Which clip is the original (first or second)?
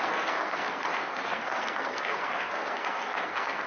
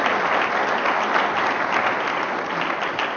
second